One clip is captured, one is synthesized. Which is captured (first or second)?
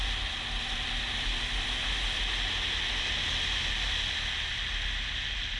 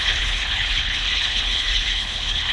first